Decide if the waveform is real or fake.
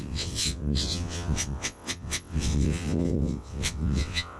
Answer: fake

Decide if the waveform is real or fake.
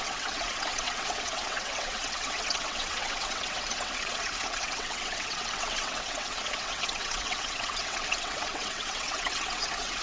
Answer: fake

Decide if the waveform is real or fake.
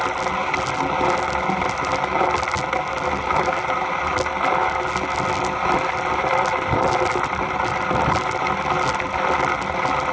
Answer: real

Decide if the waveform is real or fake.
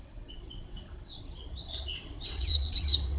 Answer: fake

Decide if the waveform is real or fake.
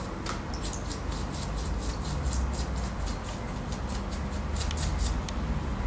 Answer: real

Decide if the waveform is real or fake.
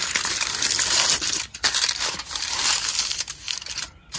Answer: real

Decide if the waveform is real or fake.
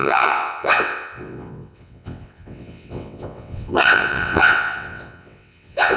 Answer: fake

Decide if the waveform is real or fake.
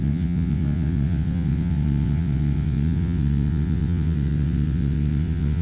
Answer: fake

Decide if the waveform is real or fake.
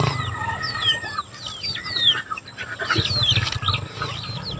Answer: real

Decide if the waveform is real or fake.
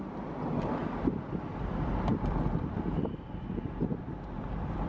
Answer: real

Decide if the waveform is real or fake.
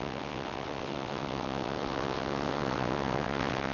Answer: fake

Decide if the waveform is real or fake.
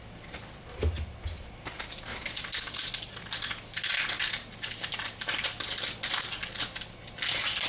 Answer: real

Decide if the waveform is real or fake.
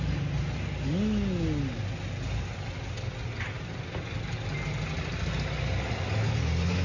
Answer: real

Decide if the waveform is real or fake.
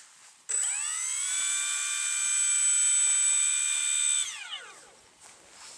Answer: real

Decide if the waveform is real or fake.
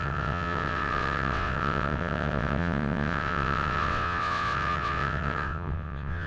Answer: fake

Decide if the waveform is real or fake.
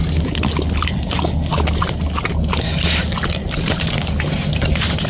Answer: real